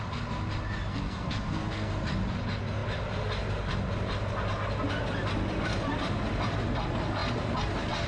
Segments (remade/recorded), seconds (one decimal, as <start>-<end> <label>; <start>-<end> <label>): 0.0-0.9 recorded; 0.9-1.9 remade; 1.9-8.1 recorded